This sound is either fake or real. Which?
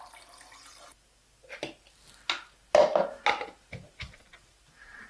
real